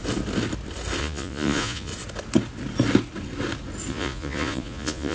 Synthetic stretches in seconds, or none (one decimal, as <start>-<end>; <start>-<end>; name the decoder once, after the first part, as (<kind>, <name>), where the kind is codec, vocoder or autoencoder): 1.0-1.9 (vocoder, Vocos); 3.9-5.1

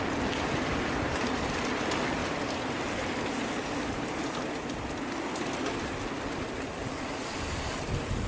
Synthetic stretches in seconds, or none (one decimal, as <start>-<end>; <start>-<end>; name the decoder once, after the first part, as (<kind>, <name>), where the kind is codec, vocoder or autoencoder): none